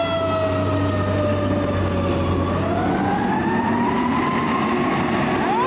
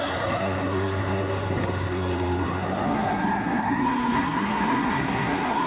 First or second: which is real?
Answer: first